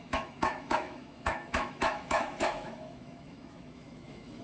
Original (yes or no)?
no